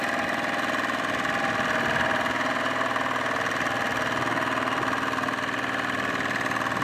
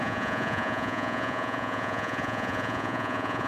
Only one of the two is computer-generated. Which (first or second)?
second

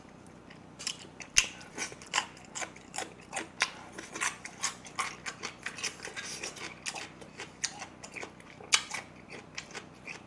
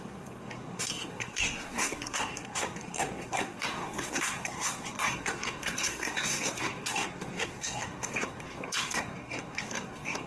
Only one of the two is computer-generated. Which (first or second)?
second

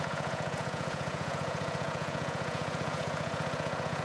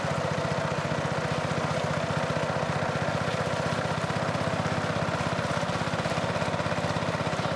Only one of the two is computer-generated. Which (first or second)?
first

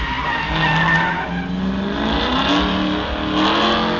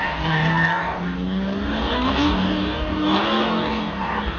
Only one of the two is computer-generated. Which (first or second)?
second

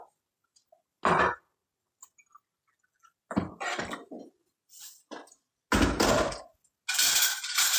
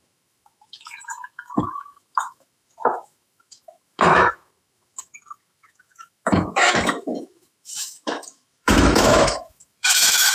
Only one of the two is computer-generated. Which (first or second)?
second